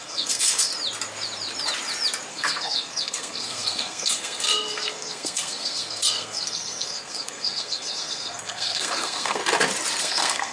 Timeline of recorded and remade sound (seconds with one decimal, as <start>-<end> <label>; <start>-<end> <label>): 0.0-0.7 remade; 0.7-2.3 recorded; 2.3-9.4 remade; 9.4-10.0 recorded; 10.0-10.5 remade